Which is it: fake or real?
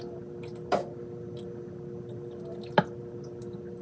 real